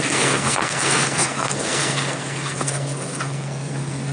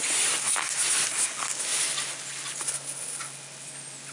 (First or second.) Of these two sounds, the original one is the second